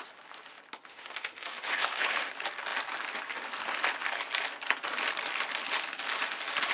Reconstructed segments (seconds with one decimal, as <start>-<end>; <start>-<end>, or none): 0.9-2.3